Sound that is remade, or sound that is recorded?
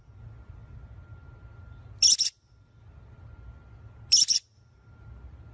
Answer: recorded